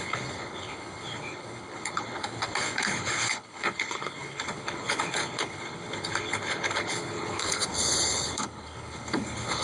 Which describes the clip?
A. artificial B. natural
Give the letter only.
A